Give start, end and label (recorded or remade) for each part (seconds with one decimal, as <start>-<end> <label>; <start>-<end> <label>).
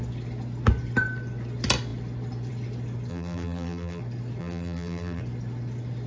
0.0-3.1 recorded; 3.1-4.0 remade; 4.0-4.4 recorded; 4.4-5.2 remade; 5.2-6.1 recorded